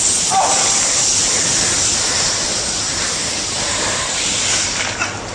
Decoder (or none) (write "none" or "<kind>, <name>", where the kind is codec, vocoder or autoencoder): none